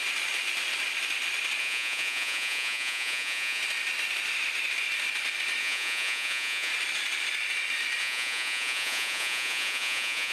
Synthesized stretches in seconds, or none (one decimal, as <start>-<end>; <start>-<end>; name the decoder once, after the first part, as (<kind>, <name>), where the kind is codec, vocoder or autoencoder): 1.6-3.6 (vocoder, Vocos); 5.6-6.7; 8.0-10.3